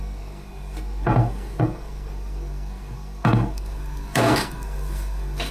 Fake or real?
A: fake